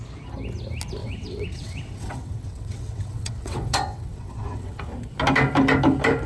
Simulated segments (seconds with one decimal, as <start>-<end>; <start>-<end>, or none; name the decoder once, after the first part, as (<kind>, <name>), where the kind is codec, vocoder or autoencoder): 1.0-4.8 (vocoder, WaveNeXt)